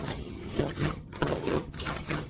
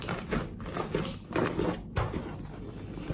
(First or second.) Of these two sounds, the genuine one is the second